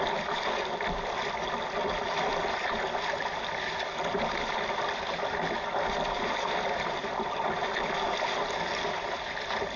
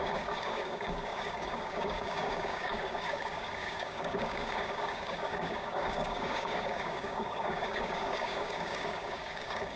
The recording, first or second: first